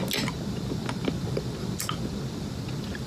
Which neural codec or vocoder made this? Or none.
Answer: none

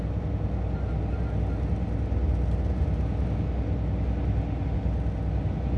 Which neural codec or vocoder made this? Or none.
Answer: none